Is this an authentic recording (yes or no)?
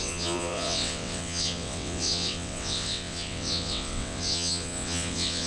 no